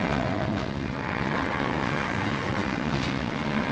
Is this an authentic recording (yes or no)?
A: no